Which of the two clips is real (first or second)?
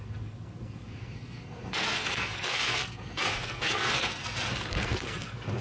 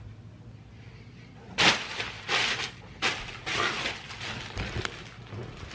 second